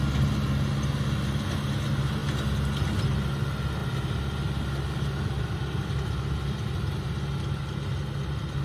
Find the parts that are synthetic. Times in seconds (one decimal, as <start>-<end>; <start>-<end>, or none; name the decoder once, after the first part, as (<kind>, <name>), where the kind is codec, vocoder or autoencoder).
2.2-3.1 (vocoder, BigVGAN v2); 3.8-5.4